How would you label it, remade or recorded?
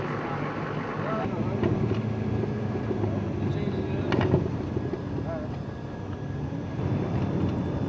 recorded